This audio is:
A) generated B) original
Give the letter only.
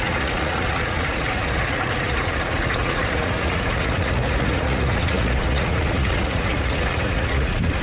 A